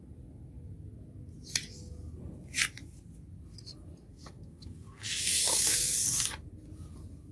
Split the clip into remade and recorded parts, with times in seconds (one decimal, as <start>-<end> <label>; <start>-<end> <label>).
0.0-4.1 recorded; 4.1-6.3 remade; 6.3-7.3 recorded